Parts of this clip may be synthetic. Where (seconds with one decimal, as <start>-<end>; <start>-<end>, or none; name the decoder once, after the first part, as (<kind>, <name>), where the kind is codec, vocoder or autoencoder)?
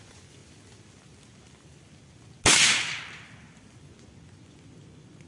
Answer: 0.0-0.4 (vocoder, Vocos); 3.6-5.3